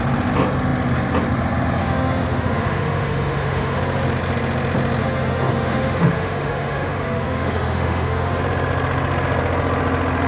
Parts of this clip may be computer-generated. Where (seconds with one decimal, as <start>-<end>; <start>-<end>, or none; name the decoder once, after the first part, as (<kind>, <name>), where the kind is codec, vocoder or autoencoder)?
1.8-3.8 (autoencoder, DAC-VAE); 5.0-8.4